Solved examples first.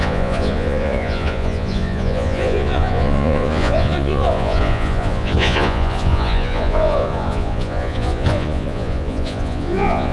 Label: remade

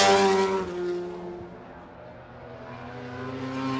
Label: recorded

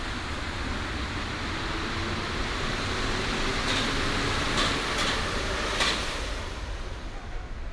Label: recorded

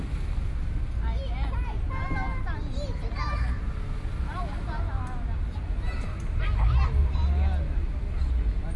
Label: recorded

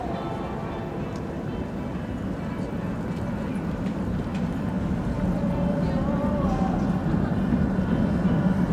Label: recorded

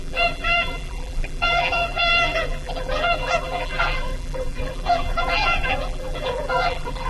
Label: remade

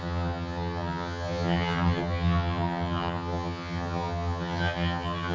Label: remade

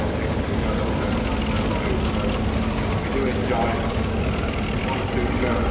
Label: recorded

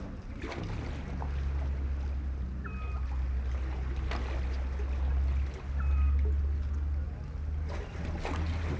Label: recorded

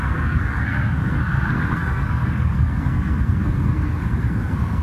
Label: remade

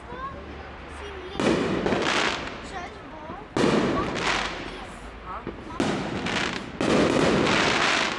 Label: recorded